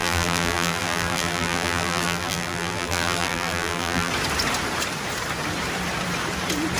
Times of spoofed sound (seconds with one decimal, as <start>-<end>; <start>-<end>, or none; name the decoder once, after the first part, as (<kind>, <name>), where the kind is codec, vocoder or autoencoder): 0.0-4.1 (vocoder, BigVGAN v2)